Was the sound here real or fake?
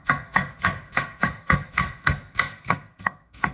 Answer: fake